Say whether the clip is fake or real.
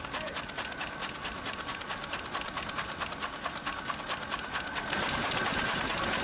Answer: real